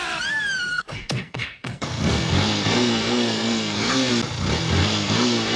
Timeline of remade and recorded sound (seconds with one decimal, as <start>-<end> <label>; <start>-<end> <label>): 0.0-0.7 recorded; 0.7-4.1 remade; 4.1-4.8 recorded; 4.8-5.6 remade